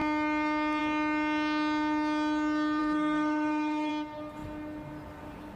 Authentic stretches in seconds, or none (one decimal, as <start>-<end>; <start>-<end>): 0.0-2.8; 3.9-5.6